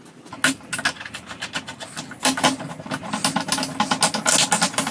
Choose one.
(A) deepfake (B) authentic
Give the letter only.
B